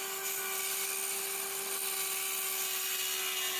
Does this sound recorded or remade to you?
recorded